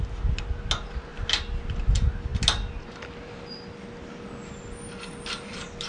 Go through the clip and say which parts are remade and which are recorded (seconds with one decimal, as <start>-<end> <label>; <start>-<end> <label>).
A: 0.0-5.9 recorded